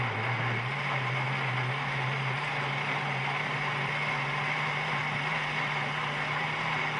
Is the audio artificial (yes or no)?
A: no